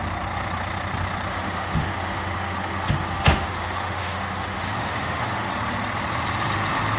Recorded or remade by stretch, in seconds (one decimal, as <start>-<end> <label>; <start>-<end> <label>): 0.0-1.3 recorded; 1.3-5.5 remade; 5.5-7.0 recorded